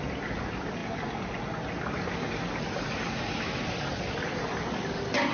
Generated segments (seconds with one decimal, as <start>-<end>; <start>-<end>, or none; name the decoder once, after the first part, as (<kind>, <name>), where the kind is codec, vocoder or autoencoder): none